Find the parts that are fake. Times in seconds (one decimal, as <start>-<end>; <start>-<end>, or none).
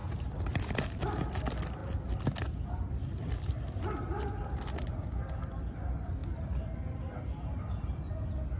none